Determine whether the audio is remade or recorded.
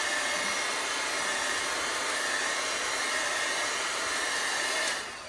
recorded